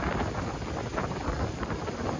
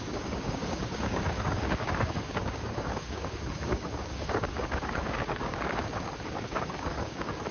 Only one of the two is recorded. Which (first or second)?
first